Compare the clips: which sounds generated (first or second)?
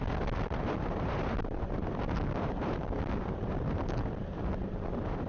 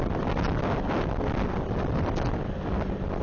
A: first